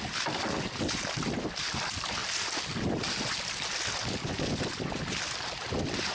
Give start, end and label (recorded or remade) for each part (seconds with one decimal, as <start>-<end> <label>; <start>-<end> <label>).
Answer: 0.0-6.1 recorded